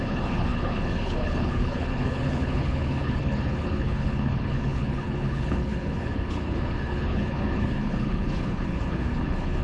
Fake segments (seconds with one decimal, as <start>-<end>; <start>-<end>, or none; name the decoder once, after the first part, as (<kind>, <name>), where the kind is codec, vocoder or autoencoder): 0.0-9.6 (codec, HILCodec)